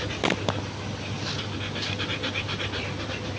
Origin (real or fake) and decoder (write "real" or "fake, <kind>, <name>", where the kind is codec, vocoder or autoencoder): real